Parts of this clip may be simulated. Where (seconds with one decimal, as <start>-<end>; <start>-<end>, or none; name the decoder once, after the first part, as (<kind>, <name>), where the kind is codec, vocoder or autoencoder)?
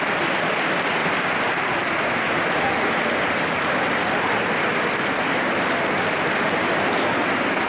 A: none